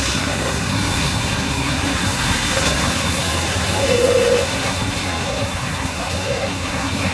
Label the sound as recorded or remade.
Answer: remade